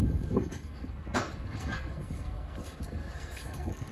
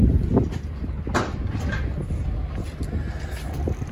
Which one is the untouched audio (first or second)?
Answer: second